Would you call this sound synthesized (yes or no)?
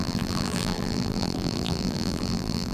yes